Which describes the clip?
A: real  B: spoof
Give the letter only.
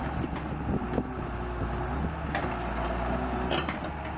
A